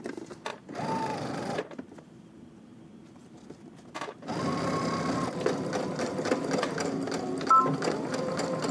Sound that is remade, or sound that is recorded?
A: recorded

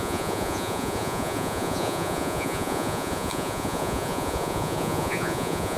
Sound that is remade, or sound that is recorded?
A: remade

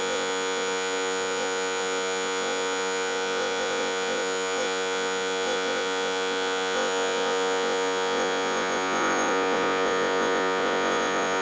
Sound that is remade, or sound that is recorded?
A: remade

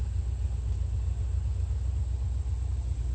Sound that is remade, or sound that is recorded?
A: recorded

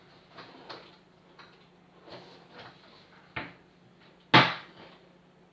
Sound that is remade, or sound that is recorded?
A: recorded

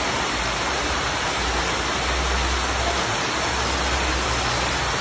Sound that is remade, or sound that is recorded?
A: recorded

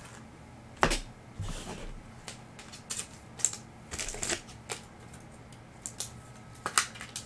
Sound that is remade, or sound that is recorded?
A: recorded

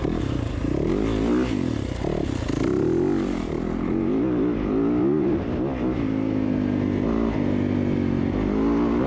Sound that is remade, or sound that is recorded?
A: recorded